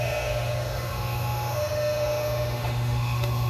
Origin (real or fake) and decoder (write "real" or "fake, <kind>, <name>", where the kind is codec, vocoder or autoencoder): fake, autoencoder, DAC-VAE